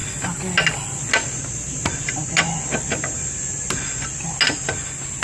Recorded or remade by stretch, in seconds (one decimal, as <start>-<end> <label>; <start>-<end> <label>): 0.0-5.2 recorded